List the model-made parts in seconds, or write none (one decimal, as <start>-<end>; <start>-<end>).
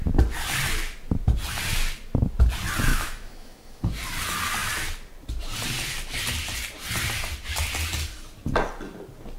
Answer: 2.9-3.8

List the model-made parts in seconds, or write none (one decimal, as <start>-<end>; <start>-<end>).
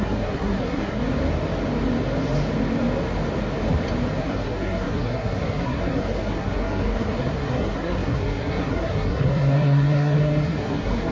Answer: 0.0-1.0; 4.2-11.1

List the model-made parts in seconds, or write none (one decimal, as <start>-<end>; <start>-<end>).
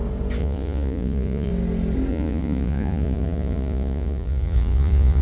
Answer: 0.4-1.5; 2.1-5.2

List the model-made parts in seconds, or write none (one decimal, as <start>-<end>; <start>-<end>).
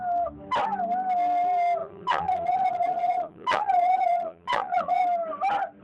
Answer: 1.8-5.0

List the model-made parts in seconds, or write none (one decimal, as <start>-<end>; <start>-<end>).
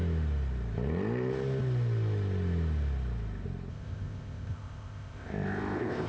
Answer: 3.7-6.1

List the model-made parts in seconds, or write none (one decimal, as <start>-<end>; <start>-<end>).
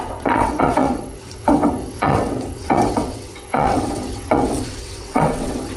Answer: 0.0-5.8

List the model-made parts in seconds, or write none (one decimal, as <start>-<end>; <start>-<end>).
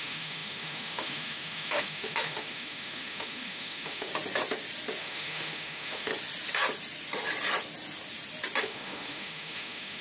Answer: 0.0-4.1; 5.0-6.1; 8.6-10.0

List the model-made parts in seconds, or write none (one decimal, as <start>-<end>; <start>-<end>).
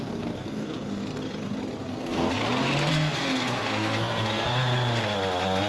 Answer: 0.0-1.2; 1.8-2.4; 2.9-4.5